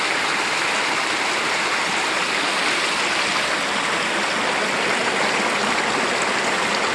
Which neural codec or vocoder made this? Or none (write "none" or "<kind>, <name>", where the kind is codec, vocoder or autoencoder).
none